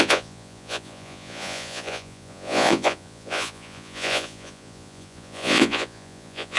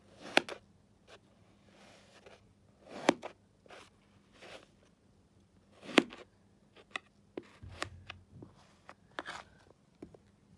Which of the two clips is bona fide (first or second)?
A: second